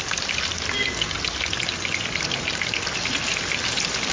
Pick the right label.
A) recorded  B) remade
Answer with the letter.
A